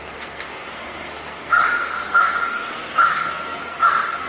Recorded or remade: remade